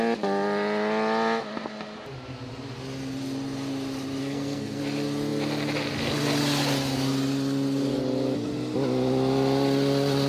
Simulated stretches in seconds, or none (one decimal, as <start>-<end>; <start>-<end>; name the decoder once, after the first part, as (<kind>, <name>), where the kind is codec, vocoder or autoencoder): 4.2-4.8 (codec, SNAC)

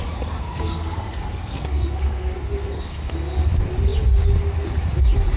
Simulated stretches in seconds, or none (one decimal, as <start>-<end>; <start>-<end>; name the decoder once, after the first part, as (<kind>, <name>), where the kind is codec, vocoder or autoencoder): 0.4-3.5 (codec, SNAC)

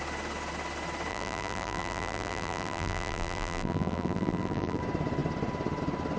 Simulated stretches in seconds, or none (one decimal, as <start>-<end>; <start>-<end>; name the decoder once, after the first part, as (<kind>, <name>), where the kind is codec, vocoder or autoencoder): 1.1-4.8 (vocoder, BigVGAN v2)

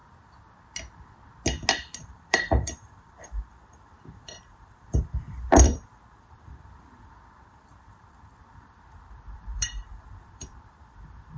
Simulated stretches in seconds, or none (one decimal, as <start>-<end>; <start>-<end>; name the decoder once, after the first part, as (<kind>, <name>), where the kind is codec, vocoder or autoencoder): 2.1-11.4 (vocoder, BigVGAN v2)

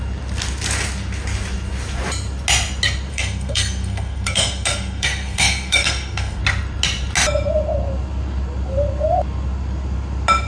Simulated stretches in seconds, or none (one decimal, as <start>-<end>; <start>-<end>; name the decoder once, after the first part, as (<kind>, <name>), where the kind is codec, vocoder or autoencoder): 3.1-6.4 (codec, SNAC)

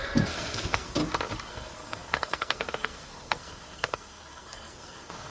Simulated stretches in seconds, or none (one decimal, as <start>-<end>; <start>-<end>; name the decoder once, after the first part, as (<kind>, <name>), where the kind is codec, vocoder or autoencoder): 0.0-1.0 (codec, SNAC); 1.5-5.3

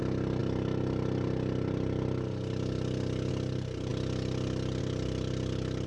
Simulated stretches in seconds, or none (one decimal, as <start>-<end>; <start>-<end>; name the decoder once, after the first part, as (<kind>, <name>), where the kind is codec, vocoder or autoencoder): none